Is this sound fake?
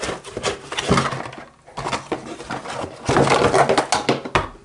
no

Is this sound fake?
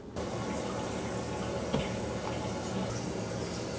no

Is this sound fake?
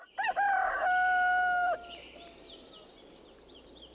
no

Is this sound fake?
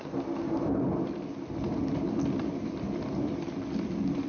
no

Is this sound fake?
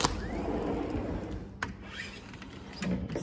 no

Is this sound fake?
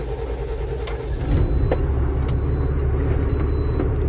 no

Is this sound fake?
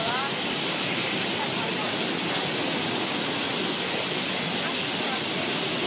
no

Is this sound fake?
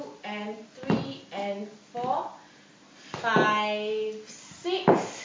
no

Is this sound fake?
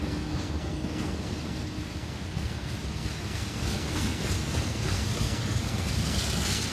yes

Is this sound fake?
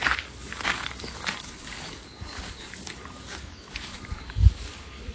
yes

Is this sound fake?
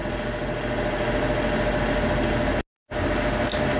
no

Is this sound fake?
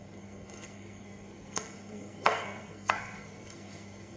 yes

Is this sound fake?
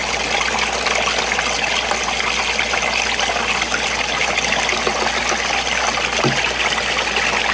no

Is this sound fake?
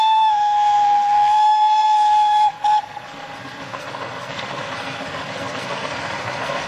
yes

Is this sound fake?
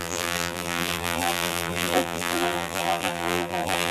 yes